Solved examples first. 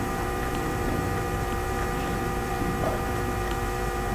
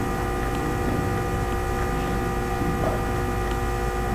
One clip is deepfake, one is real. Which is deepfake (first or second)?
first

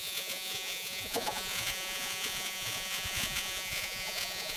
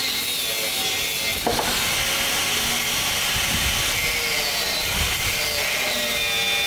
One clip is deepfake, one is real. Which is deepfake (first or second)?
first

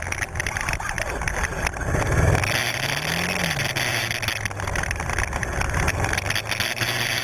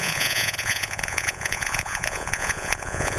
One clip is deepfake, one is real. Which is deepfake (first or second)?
second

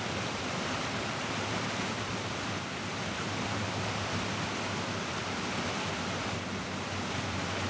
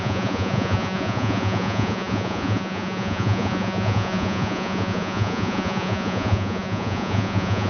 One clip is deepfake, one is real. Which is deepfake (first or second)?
second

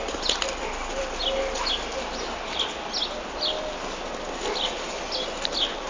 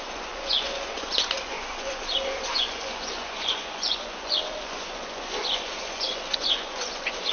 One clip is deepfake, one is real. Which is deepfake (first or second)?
second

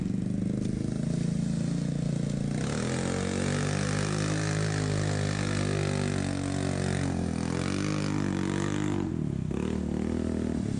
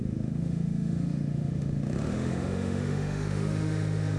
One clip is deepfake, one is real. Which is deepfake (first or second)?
second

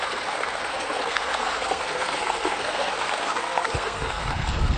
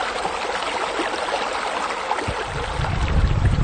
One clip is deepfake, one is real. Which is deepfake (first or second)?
first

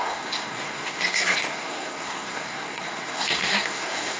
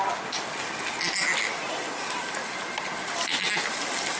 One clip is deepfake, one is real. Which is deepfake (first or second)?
first